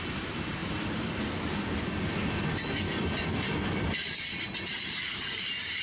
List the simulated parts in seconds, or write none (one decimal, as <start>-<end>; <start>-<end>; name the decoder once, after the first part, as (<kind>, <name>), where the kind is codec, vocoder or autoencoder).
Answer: none